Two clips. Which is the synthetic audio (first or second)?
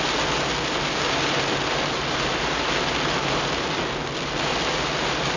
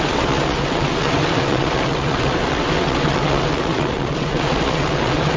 second